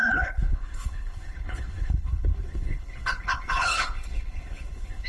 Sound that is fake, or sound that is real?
fake